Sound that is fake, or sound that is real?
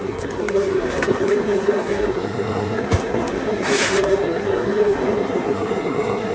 fake